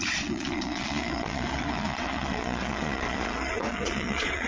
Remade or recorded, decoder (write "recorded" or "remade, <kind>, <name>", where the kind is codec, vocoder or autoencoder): remade, vocoder, Vocos